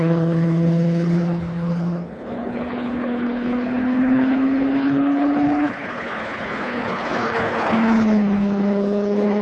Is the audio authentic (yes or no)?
no